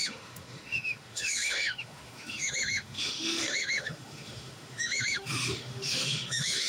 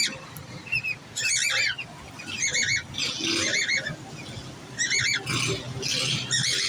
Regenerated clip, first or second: first